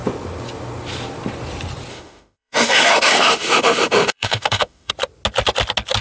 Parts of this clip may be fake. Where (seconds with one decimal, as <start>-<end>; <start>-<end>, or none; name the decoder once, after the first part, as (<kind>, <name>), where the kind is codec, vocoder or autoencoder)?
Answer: 1.9-4.9 (autoencoder, DAC-VAE)